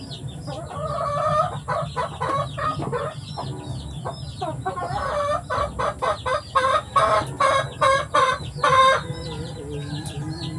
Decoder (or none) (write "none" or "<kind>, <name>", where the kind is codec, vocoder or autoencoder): none